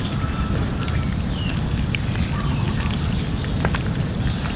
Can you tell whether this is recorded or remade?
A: recorded